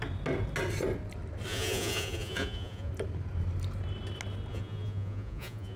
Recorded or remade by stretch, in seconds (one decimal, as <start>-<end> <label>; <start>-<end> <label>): 0.0-1.5 recorded; 1.5-2.9 remade; 2.9-4.5 recorded; 4.5-5.8 remade